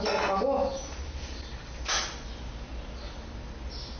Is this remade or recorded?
recorded